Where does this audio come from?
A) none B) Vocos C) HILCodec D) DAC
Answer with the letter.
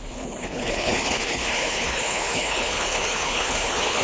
C